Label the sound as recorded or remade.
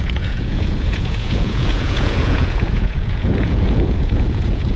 remade